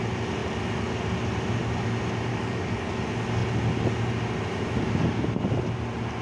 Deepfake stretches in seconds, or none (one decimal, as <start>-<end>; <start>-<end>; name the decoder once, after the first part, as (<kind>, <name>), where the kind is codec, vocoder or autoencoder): 2.3-2.9 (codec, DAC)